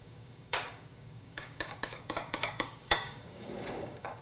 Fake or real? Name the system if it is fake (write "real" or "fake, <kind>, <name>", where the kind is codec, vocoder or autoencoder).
fake, codec, DAC